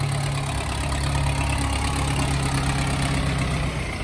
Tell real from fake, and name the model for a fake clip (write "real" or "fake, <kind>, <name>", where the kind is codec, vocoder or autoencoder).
real